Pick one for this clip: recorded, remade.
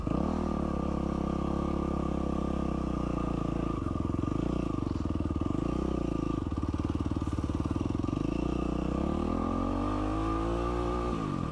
recorded